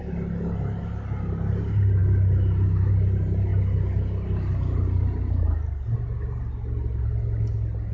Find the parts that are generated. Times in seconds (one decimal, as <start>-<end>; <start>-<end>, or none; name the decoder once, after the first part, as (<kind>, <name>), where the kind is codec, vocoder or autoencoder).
none